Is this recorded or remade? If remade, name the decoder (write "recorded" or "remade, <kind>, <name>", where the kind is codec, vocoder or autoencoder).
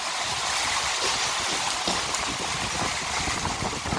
recorded